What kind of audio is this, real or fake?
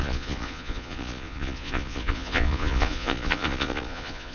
fake